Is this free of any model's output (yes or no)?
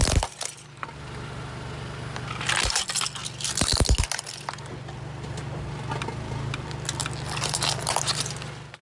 yes